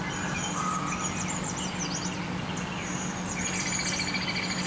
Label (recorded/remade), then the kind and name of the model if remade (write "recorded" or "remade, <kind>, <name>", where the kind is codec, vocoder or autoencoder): recorded